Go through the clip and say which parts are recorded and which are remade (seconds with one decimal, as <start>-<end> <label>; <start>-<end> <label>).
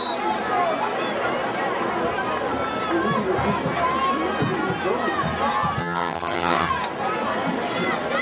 0.0-5.8 recorded; 5.8-6.7 remade; 6.7-8.2 recorded